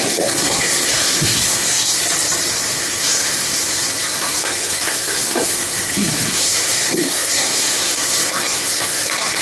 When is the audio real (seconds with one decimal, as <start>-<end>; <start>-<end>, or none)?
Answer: 2.0-2.5